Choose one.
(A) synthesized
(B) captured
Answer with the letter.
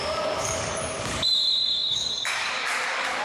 A